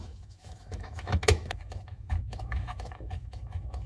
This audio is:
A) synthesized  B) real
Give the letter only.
A